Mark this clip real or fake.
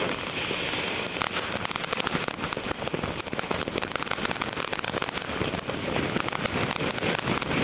real